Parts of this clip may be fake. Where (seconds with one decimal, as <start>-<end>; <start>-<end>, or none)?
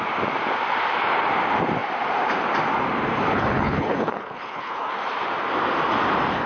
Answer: 3.3-4.9